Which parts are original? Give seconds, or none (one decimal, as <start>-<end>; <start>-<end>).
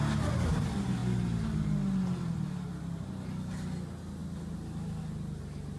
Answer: 0.0-5.8